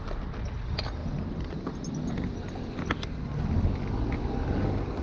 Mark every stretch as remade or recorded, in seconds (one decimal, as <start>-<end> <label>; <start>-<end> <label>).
0.0-5.0 recorded